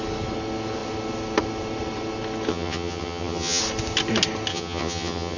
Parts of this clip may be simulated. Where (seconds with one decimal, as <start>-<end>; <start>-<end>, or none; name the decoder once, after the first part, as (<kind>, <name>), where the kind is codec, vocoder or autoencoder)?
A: 2.5-3.6 (vocoder, HiFi-GAN); 4.5-5.4